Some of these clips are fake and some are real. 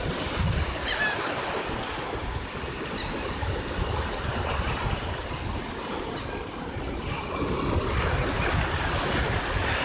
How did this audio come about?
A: real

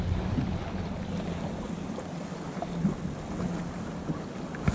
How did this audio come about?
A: real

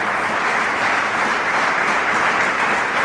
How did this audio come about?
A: real